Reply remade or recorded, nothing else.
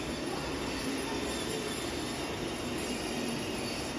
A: recorded